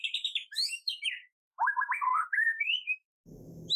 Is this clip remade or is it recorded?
remade